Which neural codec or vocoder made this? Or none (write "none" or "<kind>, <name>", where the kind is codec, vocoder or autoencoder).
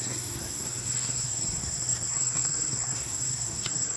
codec, SNAC